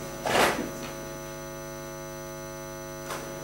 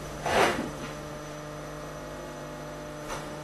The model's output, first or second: second